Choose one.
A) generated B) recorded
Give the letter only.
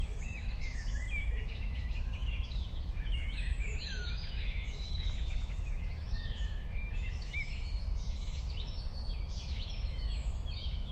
A